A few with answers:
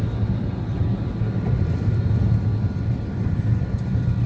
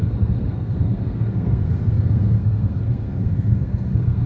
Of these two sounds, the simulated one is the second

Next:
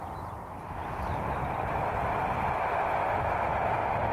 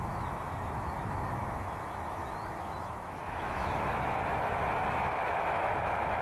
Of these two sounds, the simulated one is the second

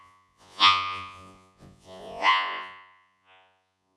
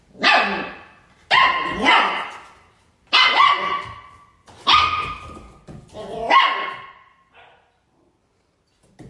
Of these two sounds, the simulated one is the first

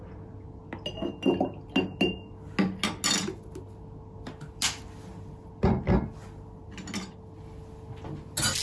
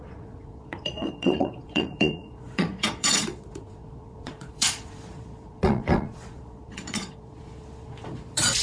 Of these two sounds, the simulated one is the second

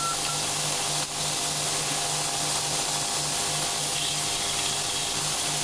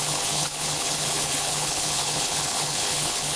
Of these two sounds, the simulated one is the second